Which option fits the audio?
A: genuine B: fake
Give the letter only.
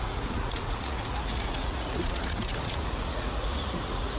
B